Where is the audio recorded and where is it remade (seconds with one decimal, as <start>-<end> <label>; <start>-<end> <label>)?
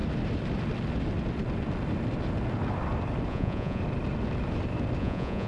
0.0-3.3 recorded; 3.3-3.8 remade; 3.8-5.0 recorded; 5.0-5.5 remade